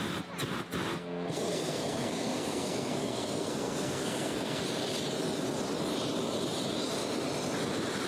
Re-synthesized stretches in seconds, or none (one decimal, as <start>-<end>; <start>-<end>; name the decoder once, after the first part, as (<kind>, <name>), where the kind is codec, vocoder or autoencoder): 0.9-4.6 (codec, SNAC)